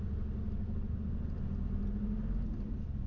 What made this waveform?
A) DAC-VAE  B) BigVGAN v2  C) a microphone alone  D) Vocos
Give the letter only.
C